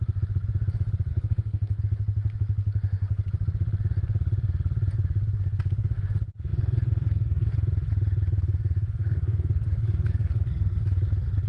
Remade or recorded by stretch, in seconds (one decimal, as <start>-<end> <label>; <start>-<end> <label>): 0.0-1.1 recorded; 1.1-1.8 remade; 1.8-6.5 recorded; 6.5-7.5 remade; 7.5-9.0 recorded; 9.0-10.8 remade; 10.8-11.5 recorded